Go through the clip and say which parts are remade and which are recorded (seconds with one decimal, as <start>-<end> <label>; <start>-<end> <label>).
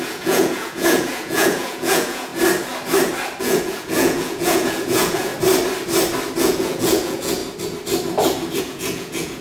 0.0-2.3 remade; 2.3-3.4 recorded; 3.4-5.3 remade; 5.3-6.4 recorded; 6.4-7.4 remade; 7.4-8.6 recorded; 8.6-9.4 remade